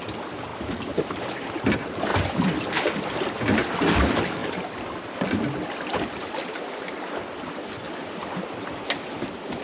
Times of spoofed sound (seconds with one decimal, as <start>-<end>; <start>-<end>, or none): 0.0-2.1; 2.8-4.4; 8.4-9.6